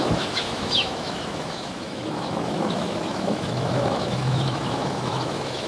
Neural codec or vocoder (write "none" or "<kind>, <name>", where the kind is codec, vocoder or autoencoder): autoencoder, DAC-VAE